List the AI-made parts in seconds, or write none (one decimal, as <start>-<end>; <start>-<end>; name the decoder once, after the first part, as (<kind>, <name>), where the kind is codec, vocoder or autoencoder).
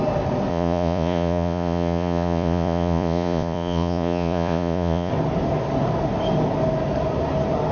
0.5-5.1 (vocoder, Vocos)